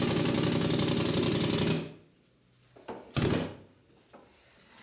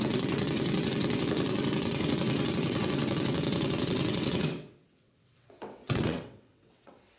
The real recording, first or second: first